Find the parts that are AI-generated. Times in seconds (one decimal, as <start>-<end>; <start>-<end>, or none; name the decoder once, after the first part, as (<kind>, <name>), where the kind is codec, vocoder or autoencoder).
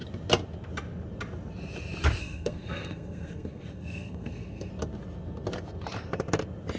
2.2-4.7 (codec, SNAC)